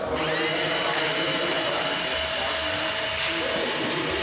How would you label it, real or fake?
real